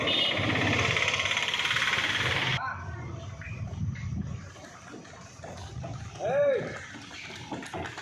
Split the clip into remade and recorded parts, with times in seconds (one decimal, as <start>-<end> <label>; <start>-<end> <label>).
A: 0.0-7.1 remade; 7.1-8.0 recorded